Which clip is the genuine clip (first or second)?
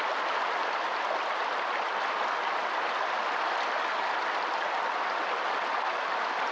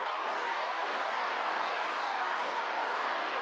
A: first